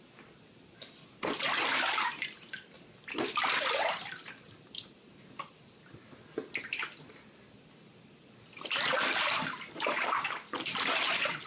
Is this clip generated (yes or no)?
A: no